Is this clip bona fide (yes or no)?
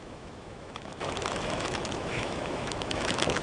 no